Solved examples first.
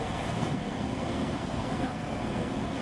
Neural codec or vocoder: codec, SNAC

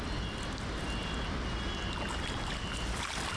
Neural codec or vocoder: none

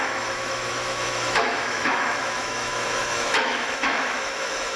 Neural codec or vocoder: autoencoder, DAC-VAE